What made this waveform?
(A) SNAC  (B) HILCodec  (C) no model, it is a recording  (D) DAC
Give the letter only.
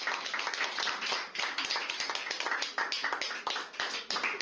C